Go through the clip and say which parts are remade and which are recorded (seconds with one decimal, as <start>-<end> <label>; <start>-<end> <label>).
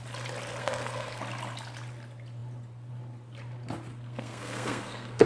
0.0-0.6 recorded; 0.6-1.2 remade; 1.2-3.9 recorded; 3.9-5.3 remade